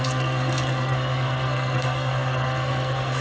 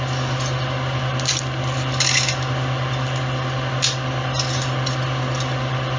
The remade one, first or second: first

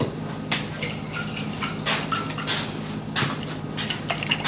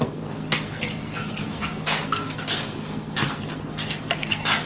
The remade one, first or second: second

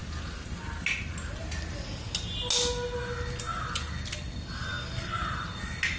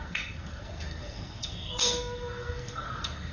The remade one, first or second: second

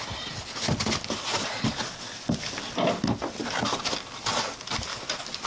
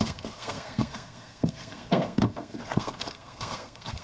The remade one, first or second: second